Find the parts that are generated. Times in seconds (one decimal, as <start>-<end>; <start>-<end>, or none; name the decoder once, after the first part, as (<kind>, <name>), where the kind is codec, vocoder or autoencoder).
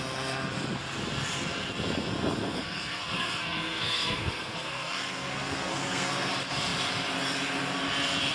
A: 2.4-6.3 (codec, SNAC)